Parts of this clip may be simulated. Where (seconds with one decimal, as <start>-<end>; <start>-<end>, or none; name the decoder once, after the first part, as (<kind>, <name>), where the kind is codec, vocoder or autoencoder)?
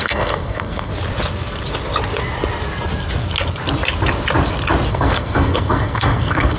0.0-0.9 (codec, SNAC); 4.9-6.6